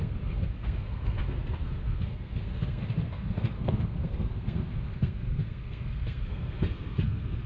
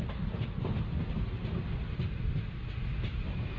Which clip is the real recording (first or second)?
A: second